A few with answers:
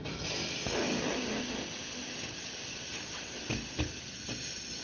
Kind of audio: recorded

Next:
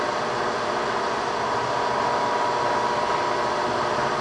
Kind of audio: recorded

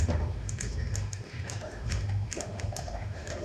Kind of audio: remade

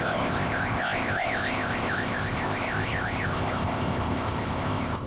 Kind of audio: remade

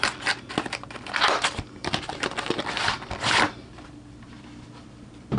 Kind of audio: remade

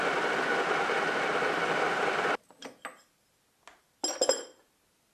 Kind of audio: recorded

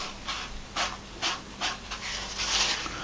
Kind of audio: recorded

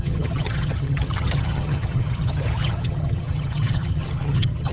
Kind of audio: remade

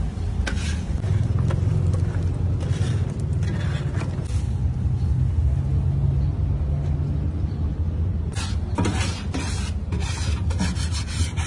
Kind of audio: recorded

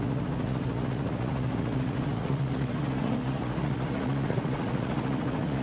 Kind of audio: remade